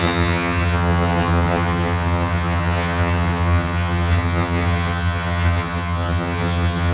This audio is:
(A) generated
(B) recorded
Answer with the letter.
A